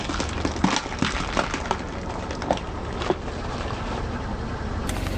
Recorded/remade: recorded